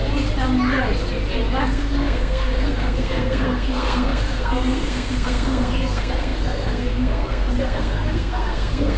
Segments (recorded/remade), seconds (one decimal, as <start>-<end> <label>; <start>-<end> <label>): 0.0-1.6 recorded; 1.6-9.0 remade

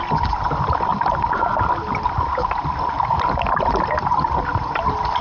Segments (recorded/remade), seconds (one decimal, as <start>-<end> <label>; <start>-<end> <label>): 0.0-5.2 recorded

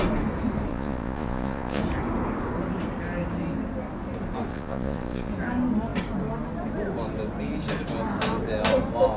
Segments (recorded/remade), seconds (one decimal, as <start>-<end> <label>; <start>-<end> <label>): 0.0-0.7 recorded; 0.7-1.8 remade; 1.8-4.5 recorded; 4.5-5.3 remade; 5.3-9.2 recorded

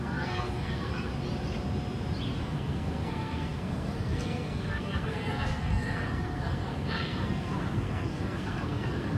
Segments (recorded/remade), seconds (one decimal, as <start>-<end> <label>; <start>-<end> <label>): 0.0-1.1 remade; 1.1-2.4 recorded; 2.4-9.2 remade

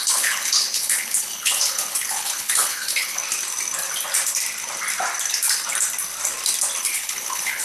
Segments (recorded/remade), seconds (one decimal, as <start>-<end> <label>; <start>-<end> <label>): 0.0-3.2 remade; 3.2-6.8 recorded; 6.8-7.6 remade